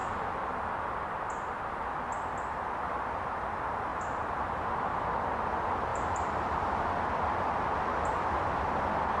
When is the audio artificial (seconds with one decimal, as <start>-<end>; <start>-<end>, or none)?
0.0-1.3; 3.9-5.0; 5.9-6.9